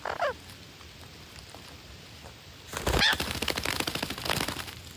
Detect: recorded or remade recorded